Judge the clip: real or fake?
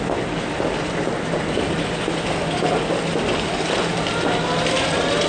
real